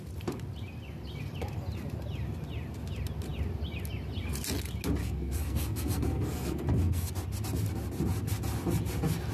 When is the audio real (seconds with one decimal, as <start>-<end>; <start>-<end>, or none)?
0.0-5.0; 7.1-9.3

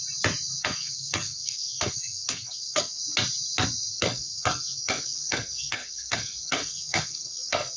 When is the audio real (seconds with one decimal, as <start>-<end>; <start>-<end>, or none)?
0.0-0.6; 3.0-3.9

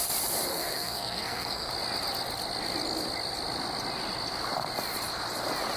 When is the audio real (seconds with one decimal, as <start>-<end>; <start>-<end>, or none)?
0.0-0.5; 1.7-5.8

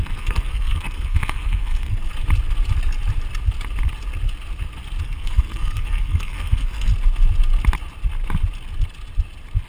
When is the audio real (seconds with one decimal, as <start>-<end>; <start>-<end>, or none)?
2.1-5.0; 6.9-9.7

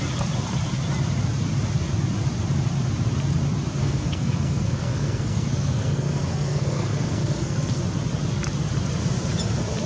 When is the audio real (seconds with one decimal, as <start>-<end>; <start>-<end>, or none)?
0.0-3.8; 7.8-9.9

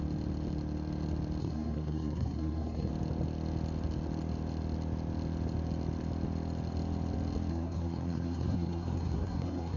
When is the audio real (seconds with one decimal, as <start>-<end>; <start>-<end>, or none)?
0.0-1.4; 2.9-7.5

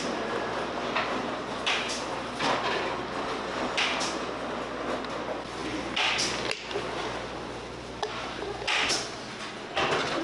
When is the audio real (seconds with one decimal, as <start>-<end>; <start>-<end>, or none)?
0.0-10.2